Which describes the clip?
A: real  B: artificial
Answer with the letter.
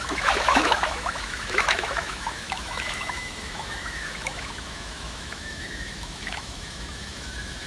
B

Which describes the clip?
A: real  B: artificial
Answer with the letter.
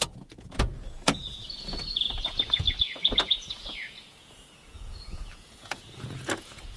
B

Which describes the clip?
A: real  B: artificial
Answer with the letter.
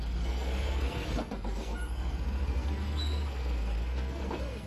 B